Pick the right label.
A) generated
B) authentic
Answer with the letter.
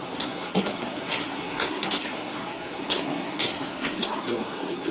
A